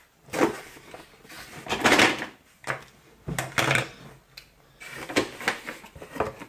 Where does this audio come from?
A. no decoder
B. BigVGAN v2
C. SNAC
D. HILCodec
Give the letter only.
A